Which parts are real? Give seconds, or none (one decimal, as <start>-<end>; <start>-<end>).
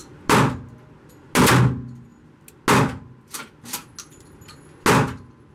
0.0-5.5